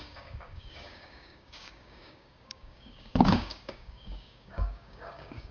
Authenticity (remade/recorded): remade